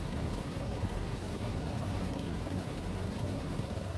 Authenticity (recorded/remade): remade